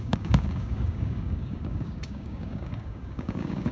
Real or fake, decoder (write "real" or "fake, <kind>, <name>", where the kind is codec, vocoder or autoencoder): fake, codec, DAC